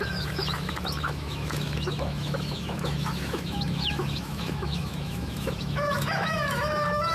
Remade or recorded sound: remade